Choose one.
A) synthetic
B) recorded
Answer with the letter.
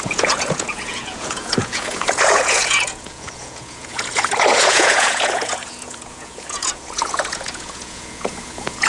A